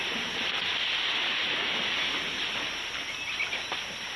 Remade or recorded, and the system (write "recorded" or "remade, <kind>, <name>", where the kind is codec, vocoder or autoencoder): recorded